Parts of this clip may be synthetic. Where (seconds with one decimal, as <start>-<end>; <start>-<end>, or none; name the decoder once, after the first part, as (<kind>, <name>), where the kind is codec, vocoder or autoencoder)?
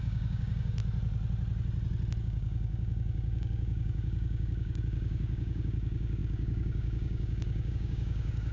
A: 0.0-0.8 (codec, DAC); 2.2-8.5